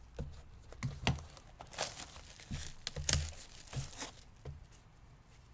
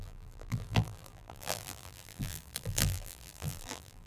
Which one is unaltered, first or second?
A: first